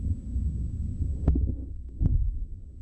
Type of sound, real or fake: real